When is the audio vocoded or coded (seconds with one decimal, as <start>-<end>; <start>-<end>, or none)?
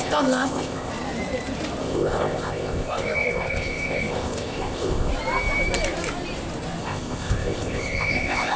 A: 0.0-0.9; 1.8-5.1; 6.8-8.6